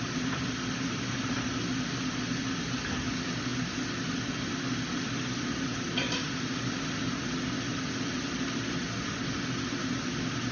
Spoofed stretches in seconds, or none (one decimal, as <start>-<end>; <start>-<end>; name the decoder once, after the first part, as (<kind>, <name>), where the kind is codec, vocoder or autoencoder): none